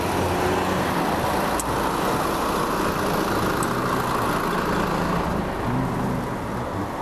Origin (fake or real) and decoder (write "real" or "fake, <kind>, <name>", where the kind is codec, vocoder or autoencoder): real